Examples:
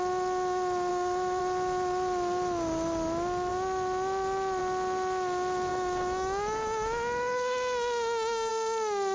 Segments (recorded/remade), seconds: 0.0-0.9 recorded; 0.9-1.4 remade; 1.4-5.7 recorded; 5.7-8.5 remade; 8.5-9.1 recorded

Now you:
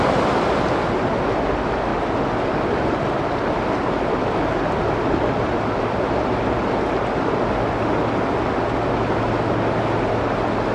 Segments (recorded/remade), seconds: 0.0-10.7 recorded